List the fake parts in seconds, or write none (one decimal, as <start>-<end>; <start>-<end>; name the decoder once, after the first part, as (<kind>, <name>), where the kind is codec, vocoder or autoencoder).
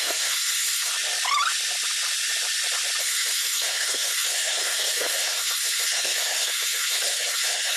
0.0-0.9 (codec, SNAC); 3.0-7.8